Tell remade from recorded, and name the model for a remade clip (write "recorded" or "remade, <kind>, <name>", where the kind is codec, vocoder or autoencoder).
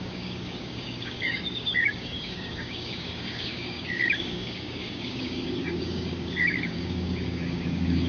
remade, codec, DAC